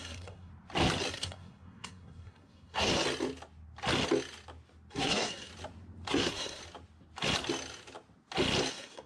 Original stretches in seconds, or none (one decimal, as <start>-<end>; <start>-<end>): 0.5-1.1; 2.9-4.9; 5.5-6.1; 6.6-8.7